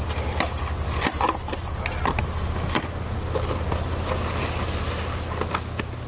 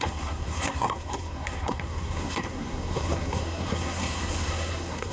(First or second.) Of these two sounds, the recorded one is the first